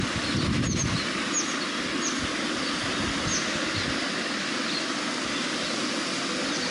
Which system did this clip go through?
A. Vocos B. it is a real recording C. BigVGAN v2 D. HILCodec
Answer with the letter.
B